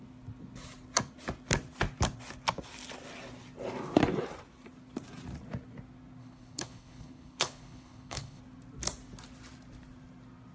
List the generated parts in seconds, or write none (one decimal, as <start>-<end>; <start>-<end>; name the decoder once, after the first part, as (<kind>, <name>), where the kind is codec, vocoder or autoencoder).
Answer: 6.2-8.4 (codec, HILCodec)